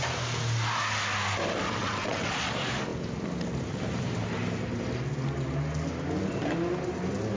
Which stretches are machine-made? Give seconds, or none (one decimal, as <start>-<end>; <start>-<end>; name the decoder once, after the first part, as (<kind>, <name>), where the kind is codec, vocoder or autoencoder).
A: 1.8-2.3 (vocoder, WaveNeXt)